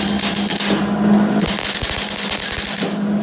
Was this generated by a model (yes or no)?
no